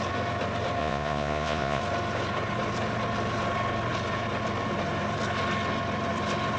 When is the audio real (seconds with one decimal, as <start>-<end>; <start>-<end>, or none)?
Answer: 0.0-0.8; 1.8-6.6